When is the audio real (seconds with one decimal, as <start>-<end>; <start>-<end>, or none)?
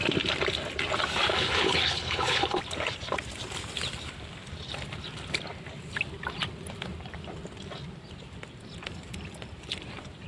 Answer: 0.0-1.3; 2.6-10.3